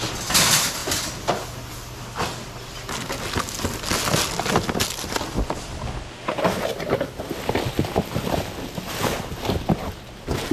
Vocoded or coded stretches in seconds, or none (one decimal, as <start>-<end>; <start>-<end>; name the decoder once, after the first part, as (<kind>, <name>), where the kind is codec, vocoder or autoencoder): none